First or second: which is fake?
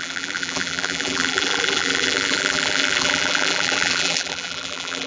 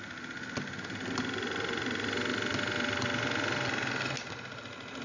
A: first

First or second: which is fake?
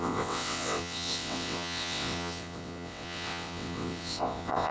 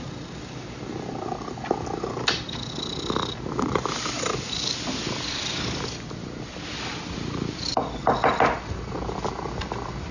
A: first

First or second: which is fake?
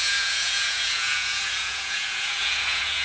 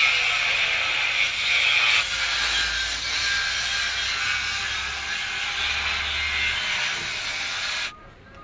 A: first